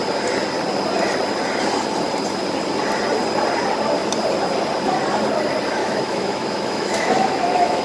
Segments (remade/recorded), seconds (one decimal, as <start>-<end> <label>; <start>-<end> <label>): 0.0-5.8 recorded; 5.8-7.8 remade